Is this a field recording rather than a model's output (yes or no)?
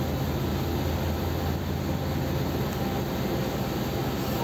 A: yes